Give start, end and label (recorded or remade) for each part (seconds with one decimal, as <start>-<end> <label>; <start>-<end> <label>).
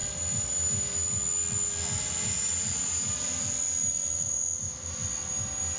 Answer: 0.0-5.8 recorded